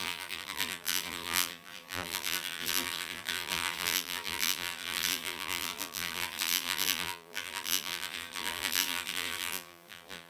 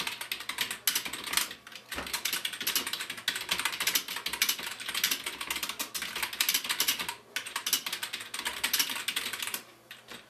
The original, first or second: second